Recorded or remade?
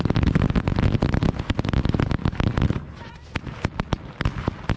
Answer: recorded